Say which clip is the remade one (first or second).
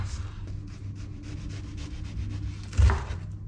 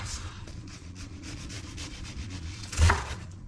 second